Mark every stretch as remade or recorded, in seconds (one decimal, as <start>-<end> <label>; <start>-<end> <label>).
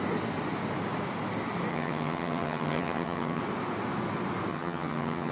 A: 0.0-1.7 recorded; 1.7-3.4 remade; 3.4-4.5 recorded; 4.5-5.3 remade